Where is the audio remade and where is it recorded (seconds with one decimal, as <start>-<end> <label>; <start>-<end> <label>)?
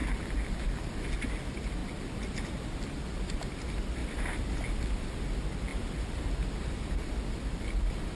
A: 0.0-4.0 recorded; 4.0-5.2 remade; 5.2-5.7 recorded; 5.7-6.3 remade; 6.3-8.2 recorded